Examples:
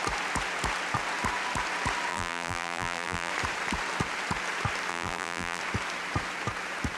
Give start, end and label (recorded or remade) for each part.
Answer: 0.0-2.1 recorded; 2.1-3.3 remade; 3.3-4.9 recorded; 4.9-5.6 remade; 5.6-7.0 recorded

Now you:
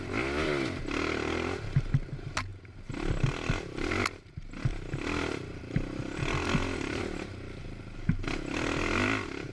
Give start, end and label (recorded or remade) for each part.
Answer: 0.0-2.5 recorded; 2.5-7.0 remade; 7.0-9.5 recorded

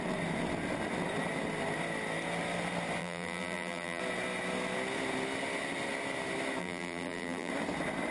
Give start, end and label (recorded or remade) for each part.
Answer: 0.0-3.0 recorded; 3.0-4.0 remade; 4.0-6.6 recorded; 6.6-7.5 remade; 7.5-8.1 recorded

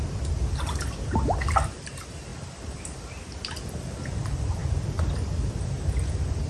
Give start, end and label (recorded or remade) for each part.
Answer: 0.0-2.3 recorded; 2.3-2.8 remade; 2.8-6.5 recorded

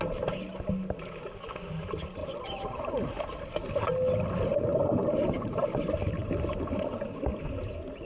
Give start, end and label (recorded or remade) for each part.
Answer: 0.0-2.2 recorded; 2.2-3.5 remade; 3.5-4.5 recorded; 4.5-7.2 remade; 7.2-8.0 recorded

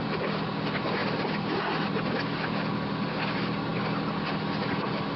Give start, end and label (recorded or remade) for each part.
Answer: 0.0-5.2 recorded

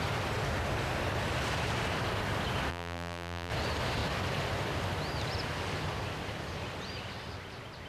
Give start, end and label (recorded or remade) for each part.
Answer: 0.0-2.7 recorded; 2.7-3.5 remade; 3.5-7.9 recorded